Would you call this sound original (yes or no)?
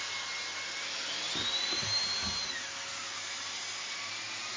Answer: yes